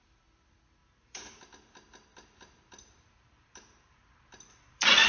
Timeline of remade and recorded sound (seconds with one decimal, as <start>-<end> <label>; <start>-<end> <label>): 0.0-0.8 recorded; 0.8-1.4 remade; 1.4-2.1 recorded; 2.1-5.1 remade